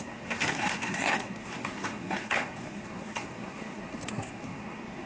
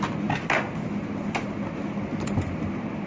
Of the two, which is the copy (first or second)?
first